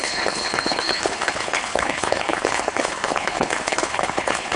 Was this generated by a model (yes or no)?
yes